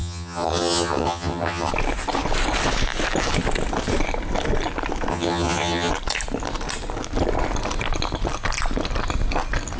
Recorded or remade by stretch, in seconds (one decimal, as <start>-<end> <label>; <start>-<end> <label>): 0.0-1.7 remade; 1.7-5.1 recorded; 5.1-5.9 remade; 5.9-9.8 recorded